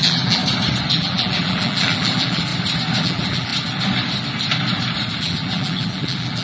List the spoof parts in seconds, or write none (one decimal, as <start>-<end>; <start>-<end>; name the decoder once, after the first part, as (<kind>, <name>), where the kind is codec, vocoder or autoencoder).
0.0-0.4 (vocoder, BigVGAN v2); 0.9-2.5; 3.0-3.5; 5.2-6.4